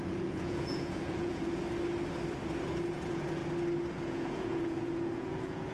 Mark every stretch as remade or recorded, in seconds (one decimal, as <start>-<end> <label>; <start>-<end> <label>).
0.0-1.6 remade; 1.6-2.9 recorded; 2.9-3.4 remade; 3.4-3.9 recorded; 3.9-5.7 remade